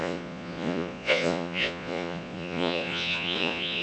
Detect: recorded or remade remade